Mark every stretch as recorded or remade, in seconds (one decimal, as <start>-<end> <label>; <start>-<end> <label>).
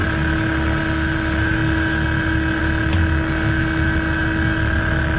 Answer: 0.0-5.2 recorded